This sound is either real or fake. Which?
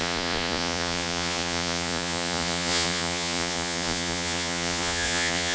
fake